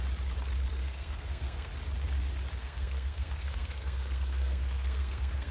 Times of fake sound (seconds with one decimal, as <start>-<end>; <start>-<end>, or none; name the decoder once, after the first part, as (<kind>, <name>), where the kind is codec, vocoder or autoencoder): 0.7-1.7 (codec, SNAC); 2.6-5.5